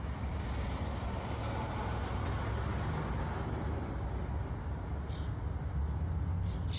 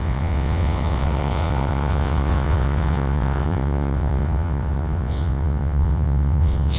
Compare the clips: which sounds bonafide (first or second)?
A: first